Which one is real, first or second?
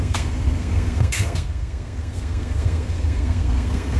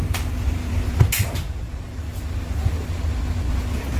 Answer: second